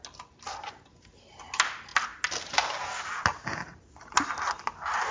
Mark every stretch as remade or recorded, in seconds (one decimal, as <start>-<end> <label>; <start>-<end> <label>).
0.0-5.1 recorded